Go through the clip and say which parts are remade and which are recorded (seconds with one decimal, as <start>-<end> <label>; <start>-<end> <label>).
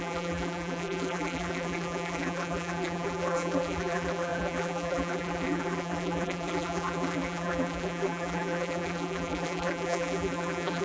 0.0-10.8 remade